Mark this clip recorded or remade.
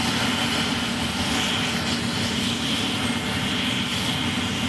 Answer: recorded